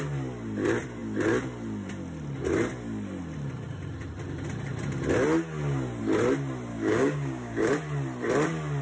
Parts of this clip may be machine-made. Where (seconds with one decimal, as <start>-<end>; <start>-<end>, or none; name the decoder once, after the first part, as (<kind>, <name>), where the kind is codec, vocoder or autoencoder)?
6.7-7.7 (codec, DAC)